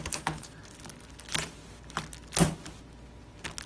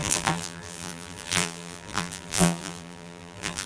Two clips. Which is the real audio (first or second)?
first